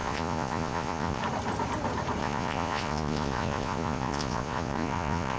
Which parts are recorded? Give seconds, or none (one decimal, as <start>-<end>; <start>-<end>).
1.2-2.2

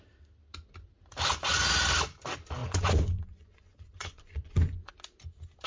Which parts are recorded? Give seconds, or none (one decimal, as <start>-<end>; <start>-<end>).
0.0-2.6; 4.9-5.7